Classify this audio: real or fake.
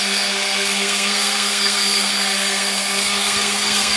fake